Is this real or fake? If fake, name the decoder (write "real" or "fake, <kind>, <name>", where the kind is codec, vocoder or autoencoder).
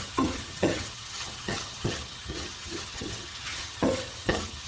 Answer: fake, vocoder, HiFi-GAN